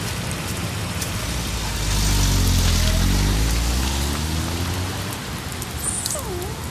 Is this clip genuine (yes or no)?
yes